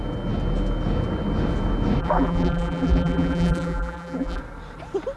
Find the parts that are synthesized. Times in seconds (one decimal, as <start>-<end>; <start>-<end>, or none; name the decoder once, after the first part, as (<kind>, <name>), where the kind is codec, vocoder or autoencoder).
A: 2.0-4.4 (vocoder, BigVGAN v2)